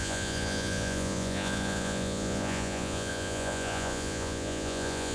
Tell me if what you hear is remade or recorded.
remade